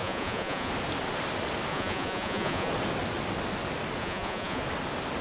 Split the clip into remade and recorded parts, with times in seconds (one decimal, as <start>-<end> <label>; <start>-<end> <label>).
0.0-0.7 remade; 0.7-1.7 recorded; 1.7-2.7 remade; 2.7-4.0 recorded; 4.0-4.6 remade; 4.6-5.2 recorded